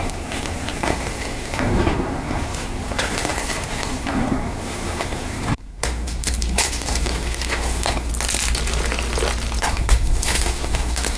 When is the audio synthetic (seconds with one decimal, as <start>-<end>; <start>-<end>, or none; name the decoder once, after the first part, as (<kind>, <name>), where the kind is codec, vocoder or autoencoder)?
0.0-8.1 (codec, SNAC); 9.6-11.2